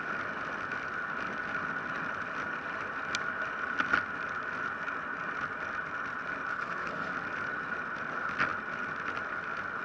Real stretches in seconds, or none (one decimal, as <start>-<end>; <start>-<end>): 0.0-6.5; 7.1-9.8